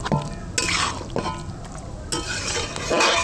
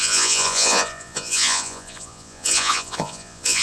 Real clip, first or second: first